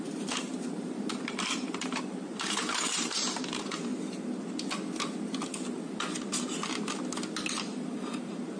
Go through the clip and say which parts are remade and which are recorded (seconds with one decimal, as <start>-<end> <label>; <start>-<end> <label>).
0.0-3.9 remade; 3.9-8.1 recorded; 8.1-8.6 remade